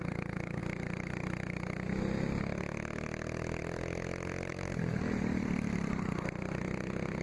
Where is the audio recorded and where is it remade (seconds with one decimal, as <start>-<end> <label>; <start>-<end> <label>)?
0.0-4.5 recorded; 4.5-6.5 remade; 6.5-7.2 recorded